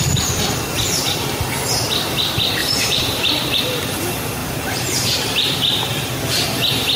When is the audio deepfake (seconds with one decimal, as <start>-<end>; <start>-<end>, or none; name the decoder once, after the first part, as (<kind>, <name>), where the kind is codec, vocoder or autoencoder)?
2.6-3.6 (vocoder, BigVGAN v2); 4.4-5.8